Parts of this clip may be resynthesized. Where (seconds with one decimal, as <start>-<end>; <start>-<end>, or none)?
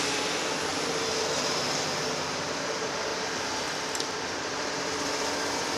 0.7-2.0; 3.1-4.2